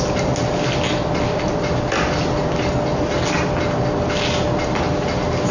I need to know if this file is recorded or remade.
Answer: recorded